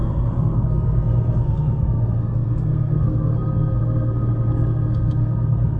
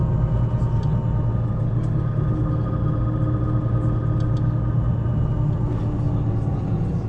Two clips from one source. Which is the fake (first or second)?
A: first